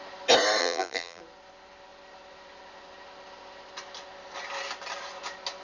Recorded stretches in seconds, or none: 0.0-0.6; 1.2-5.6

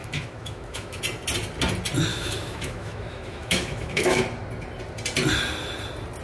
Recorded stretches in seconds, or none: 1.0-2.1; 4.2-6.2

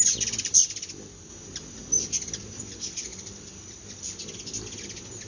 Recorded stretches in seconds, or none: 0.0-5.3

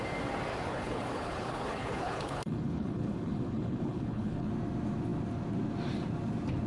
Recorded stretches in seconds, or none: 0.0-0.5; 4.5-6.7

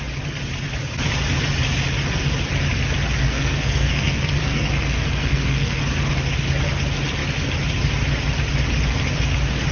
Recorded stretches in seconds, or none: 0.0-3.2; 5.8-9.7

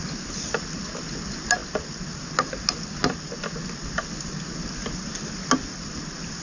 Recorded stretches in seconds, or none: 0.0-6.4

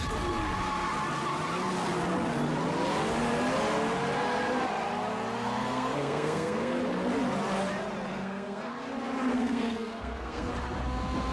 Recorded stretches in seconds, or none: 0.0-5.6; 6.8-8.1; 8.7-9.3; 10.5-11.3